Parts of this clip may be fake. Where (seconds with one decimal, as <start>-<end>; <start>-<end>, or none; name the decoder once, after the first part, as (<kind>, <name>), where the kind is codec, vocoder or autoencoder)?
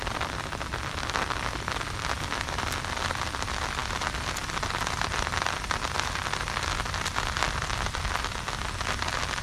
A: none